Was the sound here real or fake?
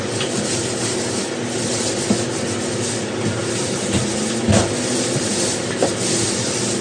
real